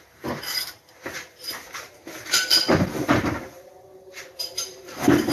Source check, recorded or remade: remade